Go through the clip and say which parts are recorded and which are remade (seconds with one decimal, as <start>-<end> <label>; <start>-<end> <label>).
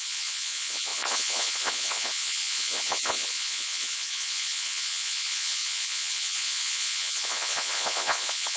0.0-8.6 remade